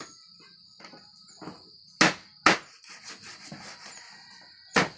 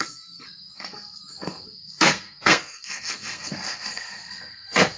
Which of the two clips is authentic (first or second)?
first